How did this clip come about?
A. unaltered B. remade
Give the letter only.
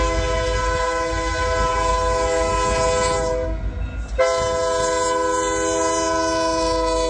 A